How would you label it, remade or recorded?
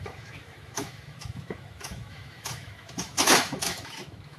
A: remade